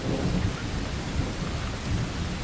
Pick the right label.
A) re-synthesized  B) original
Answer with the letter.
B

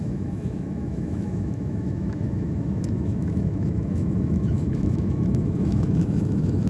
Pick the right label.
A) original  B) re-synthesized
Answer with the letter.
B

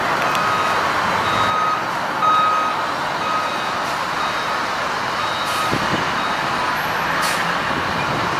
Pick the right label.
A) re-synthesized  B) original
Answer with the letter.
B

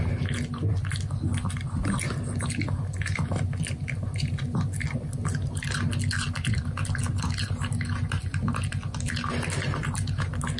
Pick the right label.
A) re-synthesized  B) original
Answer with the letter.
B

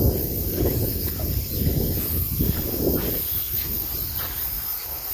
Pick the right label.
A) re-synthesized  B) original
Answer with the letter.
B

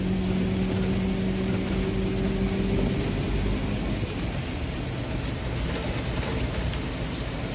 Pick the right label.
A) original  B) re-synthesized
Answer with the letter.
A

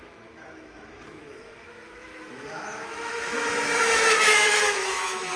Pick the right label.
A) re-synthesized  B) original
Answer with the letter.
A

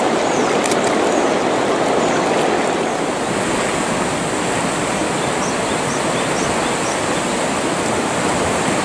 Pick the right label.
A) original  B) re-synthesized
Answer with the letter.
A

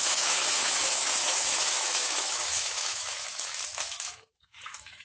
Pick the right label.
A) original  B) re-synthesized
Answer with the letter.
B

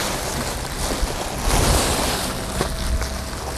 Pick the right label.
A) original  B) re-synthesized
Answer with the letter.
A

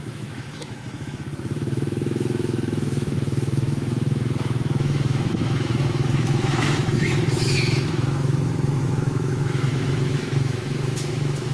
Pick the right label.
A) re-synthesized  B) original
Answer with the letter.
A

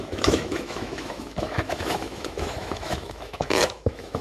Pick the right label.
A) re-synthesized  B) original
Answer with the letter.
A